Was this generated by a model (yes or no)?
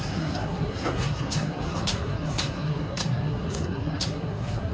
yes